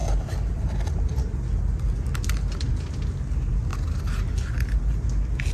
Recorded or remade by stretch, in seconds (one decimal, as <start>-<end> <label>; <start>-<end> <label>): 0.0-5.5 recorded